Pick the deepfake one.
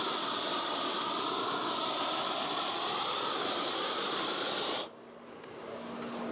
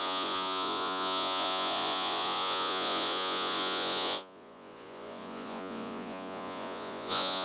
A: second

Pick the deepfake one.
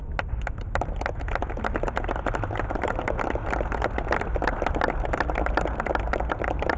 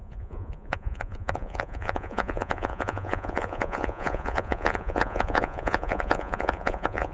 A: second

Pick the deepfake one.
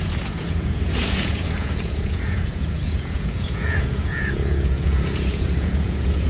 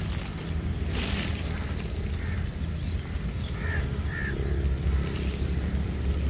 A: first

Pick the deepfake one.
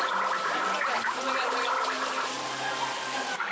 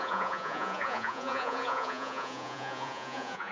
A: second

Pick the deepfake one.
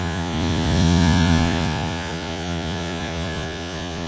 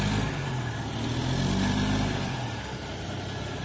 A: first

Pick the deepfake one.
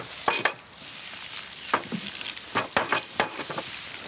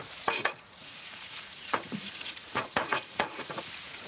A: second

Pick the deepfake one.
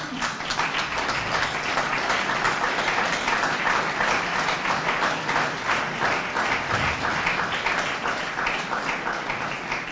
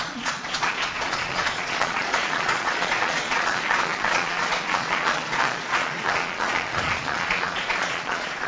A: second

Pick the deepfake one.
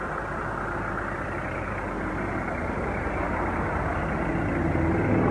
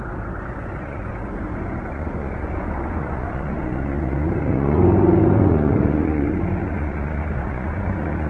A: second